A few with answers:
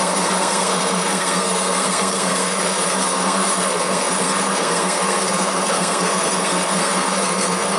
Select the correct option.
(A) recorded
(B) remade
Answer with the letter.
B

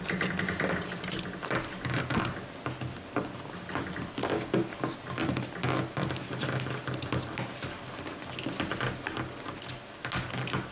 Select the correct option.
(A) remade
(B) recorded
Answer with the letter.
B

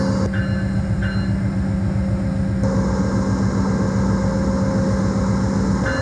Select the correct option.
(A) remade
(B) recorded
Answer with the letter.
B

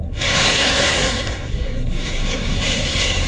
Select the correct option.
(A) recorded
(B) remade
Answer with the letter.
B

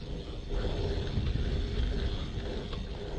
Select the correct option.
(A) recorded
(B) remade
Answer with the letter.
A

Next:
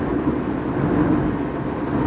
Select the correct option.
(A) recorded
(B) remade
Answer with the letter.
A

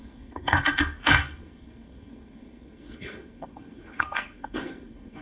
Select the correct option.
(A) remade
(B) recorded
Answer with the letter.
A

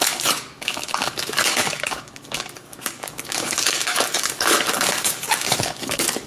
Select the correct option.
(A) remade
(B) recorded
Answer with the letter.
A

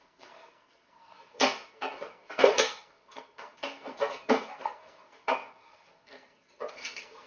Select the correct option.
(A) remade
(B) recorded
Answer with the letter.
A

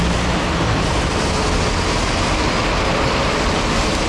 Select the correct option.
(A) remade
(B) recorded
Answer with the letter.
B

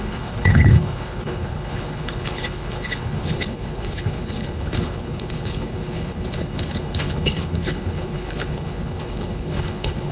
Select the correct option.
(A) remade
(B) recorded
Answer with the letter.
A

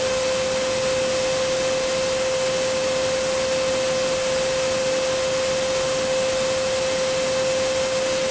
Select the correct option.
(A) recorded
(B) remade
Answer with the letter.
A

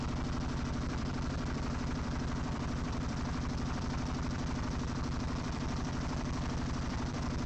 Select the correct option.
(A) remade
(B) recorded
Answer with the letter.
A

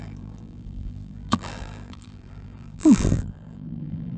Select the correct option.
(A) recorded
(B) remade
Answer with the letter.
B